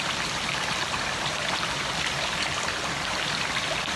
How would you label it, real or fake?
real